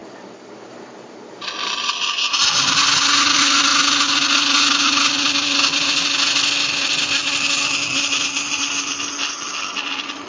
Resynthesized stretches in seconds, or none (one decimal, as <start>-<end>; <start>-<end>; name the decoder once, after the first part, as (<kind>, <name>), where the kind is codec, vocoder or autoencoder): none